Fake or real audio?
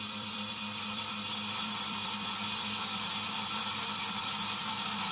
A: fake